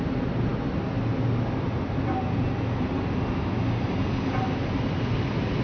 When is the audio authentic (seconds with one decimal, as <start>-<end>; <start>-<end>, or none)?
0.0-5.6